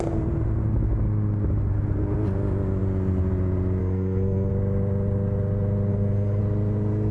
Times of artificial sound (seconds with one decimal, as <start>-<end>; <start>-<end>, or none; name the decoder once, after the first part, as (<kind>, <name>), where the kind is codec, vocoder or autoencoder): 3.8-4.5 (codec, SNAC); 5.9-6.4